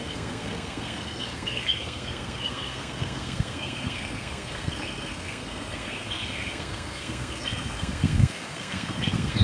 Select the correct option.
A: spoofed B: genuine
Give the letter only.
A